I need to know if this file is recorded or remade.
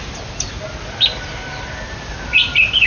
recorded